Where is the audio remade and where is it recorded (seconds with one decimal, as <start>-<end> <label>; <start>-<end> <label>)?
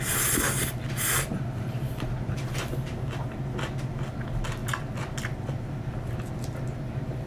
0.0-7.3 recorded